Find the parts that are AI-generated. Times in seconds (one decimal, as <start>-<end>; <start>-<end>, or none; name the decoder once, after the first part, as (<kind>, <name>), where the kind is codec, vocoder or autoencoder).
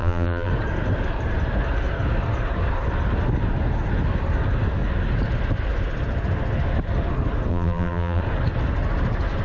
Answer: 0.0-0.5 (vocoder, BigVGAN v2); 7.5-8.2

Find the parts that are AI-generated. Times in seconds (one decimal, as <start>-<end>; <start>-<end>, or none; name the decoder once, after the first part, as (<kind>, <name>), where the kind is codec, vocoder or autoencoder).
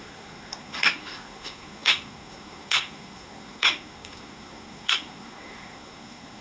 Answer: 0.0-6.4 (codec, SNAC)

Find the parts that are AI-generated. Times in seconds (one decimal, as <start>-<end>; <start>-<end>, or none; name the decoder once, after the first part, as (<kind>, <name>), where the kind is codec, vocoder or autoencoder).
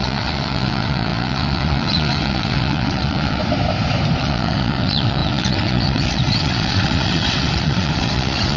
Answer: 0.0-3.4 (vocoder, WaveNeXt); 4.2-8.6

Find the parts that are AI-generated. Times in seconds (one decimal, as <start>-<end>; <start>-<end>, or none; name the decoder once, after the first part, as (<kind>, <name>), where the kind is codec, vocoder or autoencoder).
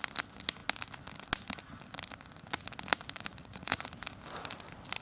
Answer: 3.3-3.8 (vocoder, Vocos)